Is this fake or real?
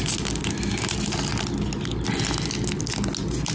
real